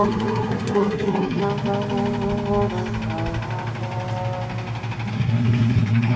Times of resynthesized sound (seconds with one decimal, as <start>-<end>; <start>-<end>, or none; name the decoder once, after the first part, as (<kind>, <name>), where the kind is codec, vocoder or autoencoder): 0.0-1.4 (codec, SNAC); 5.1-6.2